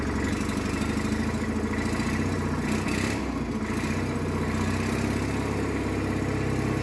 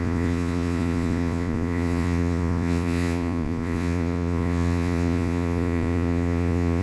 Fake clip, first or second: second